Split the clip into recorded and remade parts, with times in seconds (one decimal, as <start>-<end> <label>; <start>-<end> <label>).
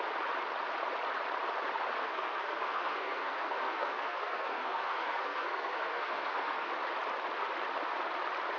0.0-2.0 recorded; 2.0-6.7 remade; 6.7-8.6 recorded